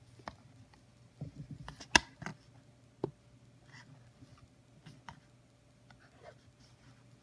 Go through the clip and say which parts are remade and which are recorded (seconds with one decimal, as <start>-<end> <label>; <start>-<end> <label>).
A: 0.0-7.2 recorded